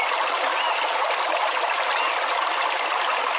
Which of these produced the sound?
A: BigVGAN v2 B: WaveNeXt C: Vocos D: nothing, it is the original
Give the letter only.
D